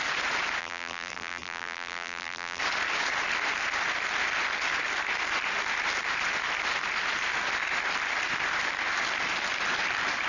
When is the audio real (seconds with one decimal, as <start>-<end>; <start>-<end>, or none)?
0.0-0.6; 2.6-10.3